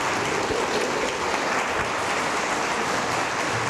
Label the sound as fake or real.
real